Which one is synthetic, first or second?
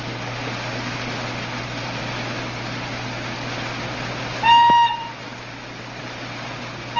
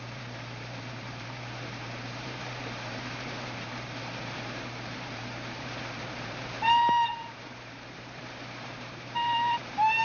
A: second